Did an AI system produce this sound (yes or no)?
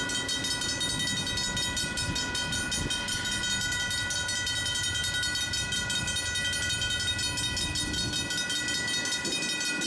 no